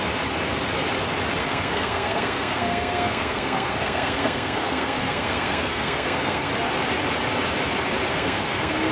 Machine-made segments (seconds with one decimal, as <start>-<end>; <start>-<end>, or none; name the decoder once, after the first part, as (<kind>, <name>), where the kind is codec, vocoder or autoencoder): 1.4-6.5 (codec, SNAC); 8.1-8.9